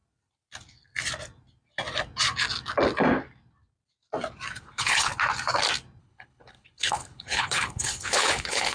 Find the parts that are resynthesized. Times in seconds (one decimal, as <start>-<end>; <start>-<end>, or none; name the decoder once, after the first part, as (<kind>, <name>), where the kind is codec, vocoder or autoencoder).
4.6-5.1 (codec, HILCodec); 6.0-8.7